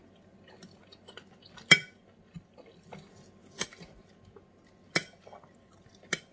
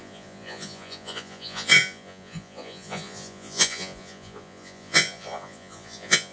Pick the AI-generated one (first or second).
second